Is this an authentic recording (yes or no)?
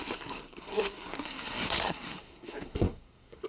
no